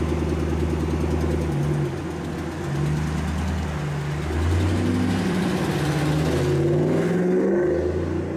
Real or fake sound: real